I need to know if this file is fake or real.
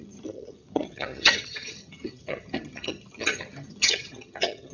fake